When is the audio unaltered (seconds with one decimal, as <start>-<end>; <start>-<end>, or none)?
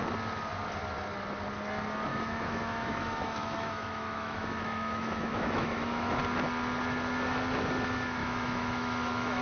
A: 0.0-2.1; 6.2-8.2